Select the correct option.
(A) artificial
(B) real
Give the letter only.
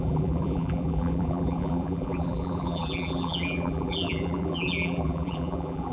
A